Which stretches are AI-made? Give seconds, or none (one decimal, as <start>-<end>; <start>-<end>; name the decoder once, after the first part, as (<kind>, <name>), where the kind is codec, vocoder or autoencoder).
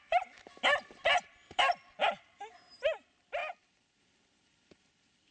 none